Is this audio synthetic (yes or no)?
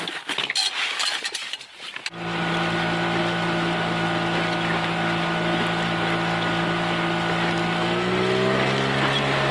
no